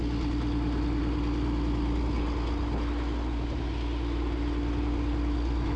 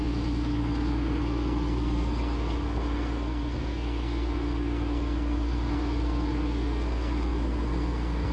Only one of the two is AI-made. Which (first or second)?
second